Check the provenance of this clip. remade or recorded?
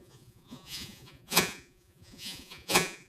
remade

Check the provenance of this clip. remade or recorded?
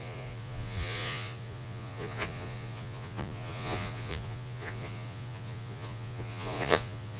remade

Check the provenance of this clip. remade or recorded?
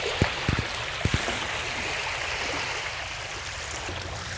recorded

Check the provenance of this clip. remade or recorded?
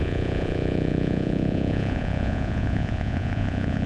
remade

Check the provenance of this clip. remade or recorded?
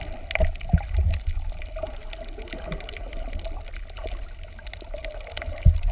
recorded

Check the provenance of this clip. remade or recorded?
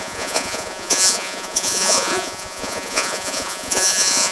remade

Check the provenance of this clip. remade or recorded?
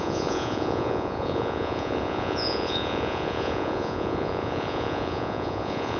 remade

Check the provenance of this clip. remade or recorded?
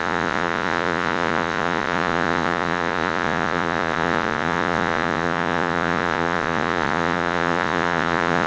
remade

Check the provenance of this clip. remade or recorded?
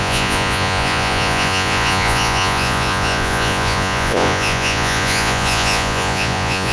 remade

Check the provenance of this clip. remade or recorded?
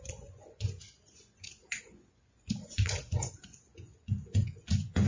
remade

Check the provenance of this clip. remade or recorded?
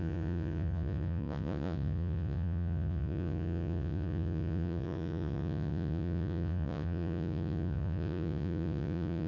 remade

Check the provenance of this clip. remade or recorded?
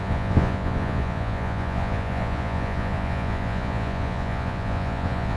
remade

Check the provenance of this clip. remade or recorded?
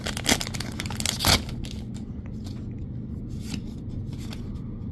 recorded